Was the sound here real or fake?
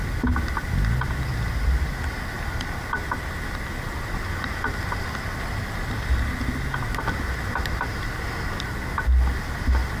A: real